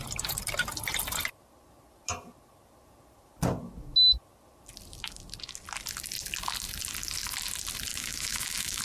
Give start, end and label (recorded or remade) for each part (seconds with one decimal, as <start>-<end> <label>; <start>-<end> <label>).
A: 0.0-7.9 recorded; 7.9-8.8 remade